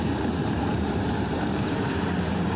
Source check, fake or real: fake